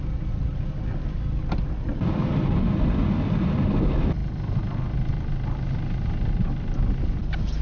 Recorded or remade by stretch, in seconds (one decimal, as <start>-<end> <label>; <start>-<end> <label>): 0.0-7.6 recorded